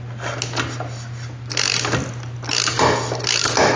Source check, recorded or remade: recorded